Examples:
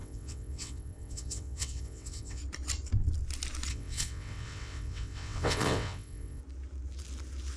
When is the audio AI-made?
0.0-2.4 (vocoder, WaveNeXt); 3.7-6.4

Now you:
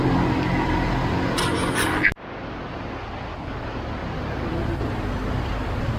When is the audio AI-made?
4.0-4.6 (vocoder, BigVGAN v2)